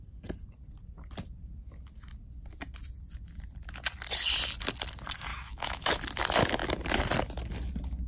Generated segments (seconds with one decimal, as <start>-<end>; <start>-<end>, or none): 5.3-6.0